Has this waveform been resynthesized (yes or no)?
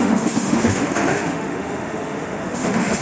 yes